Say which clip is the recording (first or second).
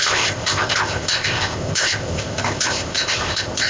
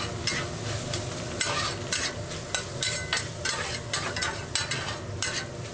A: second